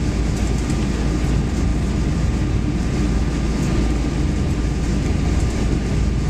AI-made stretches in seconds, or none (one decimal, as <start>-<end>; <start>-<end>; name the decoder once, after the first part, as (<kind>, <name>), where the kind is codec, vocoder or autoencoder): none